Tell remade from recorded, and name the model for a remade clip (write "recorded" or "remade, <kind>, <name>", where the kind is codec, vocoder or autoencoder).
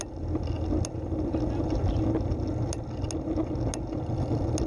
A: recorded